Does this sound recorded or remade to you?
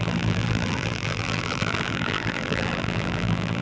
remade